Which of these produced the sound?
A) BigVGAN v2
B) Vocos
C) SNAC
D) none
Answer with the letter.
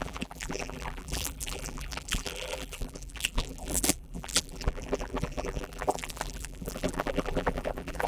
A